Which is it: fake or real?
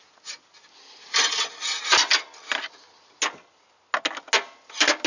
real